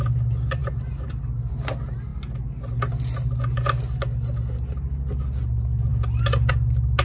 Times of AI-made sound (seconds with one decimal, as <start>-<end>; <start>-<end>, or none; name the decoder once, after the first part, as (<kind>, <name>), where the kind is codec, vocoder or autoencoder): none